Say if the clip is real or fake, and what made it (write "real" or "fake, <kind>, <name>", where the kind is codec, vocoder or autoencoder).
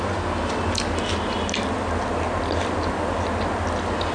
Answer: real